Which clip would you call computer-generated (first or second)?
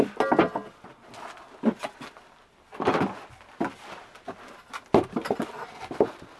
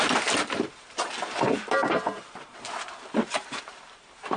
second